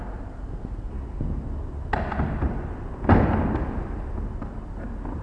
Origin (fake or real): real